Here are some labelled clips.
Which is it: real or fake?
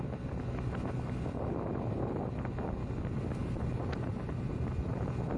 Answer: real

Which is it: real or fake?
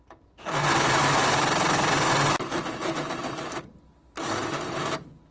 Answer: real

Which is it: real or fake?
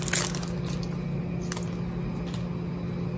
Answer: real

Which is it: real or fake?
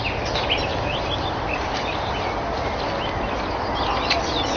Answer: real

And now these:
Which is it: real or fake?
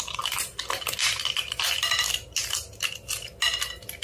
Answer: real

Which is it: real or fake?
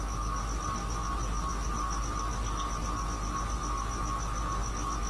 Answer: real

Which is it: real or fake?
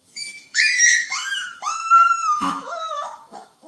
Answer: fake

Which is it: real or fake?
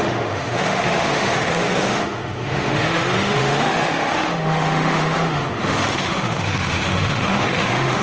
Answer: fake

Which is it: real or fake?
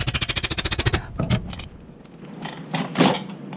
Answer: real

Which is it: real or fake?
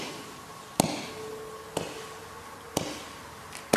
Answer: real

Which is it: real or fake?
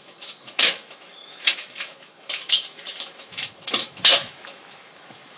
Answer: fake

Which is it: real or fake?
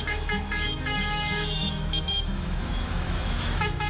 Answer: fake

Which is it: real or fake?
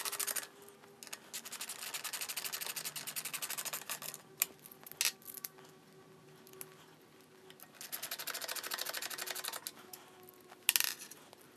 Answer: real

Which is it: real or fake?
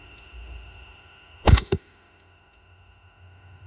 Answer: fake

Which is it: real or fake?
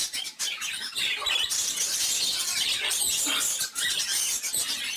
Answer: real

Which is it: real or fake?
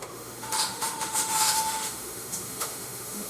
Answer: fake